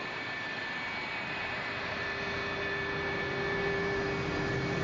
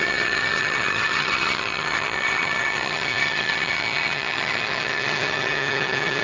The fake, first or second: second